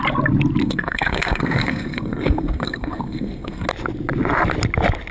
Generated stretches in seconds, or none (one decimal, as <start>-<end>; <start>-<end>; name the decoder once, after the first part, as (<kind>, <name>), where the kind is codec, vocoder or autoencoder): 0.6-3.7 (codec, SNAC)